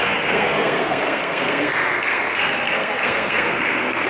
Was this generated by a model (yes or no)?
yes